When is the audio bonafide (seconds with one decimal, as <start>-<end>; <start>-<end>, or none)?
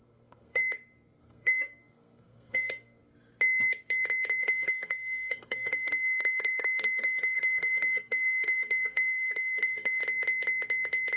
0.6-1.2; 3.0-4.4; 10.0-11.2